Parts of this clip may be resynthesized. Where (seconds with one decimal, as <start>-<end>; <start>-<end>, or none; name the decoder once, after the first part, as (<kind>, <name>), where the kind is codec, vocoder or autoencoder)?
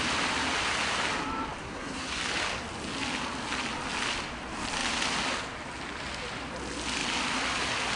1.6-2.2 (codec, SNAC)